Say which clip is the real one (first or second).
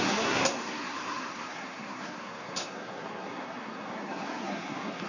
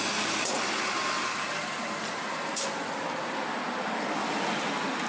second